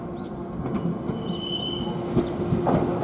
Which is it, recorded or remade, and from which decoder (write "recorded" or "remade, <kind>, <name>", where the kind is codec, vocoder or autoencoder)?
recorded